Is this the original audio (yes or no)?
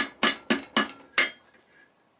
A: yes